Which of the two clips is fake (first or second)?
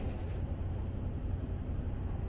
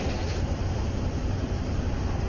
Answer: second